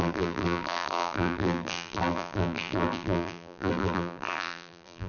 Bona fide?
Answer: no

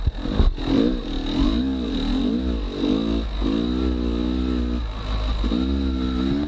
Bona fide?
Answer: yes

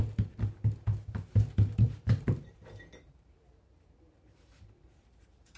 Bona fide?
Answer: no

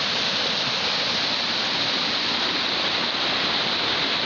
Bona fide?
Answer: yes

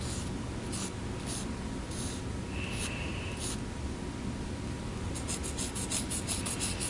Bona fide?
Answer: yes